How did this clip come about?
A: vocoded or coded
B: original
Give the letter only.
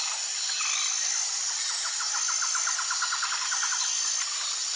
B